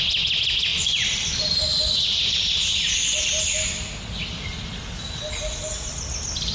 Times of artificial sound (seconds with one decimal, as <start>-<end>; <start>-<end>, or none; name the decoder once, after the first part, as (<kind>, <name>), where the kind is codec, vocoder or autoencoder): 0.7-3.0 (vocoder, BigVGAN v2)